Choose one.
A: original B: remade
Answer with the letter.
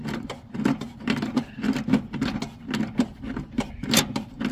A